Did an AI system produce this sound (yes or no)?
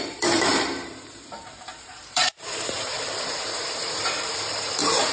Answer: yes